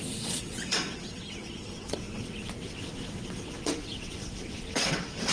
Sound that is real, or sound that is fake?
fake